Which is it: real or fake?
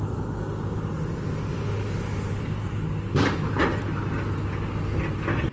real